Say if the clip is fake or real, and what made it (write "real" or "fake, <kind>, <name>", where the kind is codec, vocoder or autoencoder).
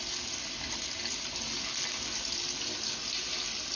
real